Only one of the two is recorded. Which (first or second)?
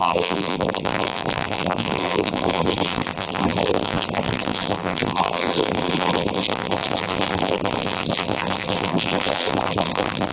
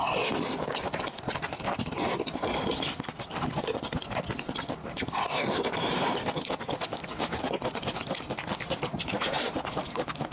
second